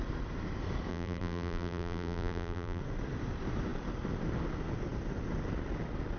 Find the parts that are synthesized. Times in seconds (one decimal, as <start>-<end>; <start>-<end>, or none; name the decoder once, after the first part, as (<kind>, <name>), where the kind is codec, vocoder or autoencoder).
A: 0.9-2.8 (vocoder, BigVGAN v2)